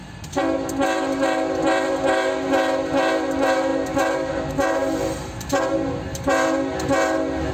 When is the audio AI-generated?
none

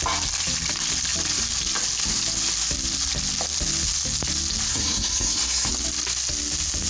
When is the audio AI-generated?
4.7-5.7 (codec, SNAC)

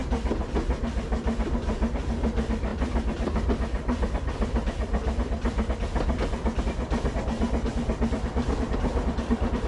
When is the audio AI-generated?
none

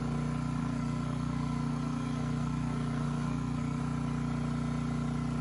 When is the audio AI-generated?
0.6-3.8 (codec, SNAC)